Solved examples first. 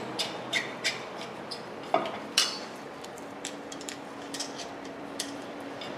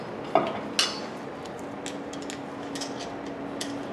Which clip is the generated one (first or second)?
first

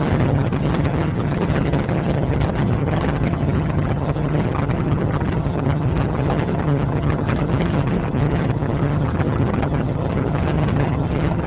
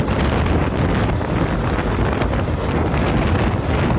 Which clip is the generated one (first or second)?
first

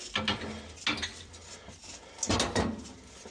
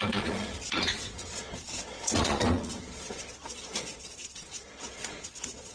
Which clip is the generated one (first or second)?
second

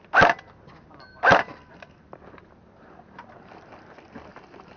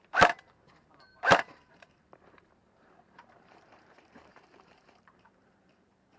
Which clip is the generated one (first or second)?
second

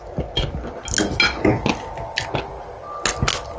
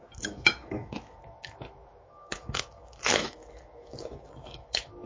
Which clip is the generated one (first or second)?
second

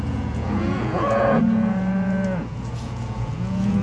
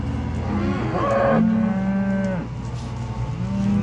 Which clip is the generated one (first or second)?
first